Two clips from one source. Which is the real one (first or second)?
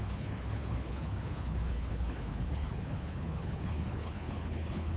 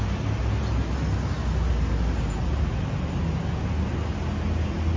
second